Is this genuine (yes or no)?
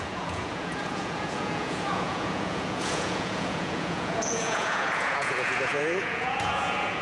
no